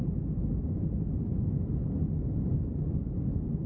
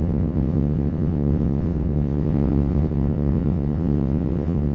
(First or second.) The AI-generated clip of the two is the second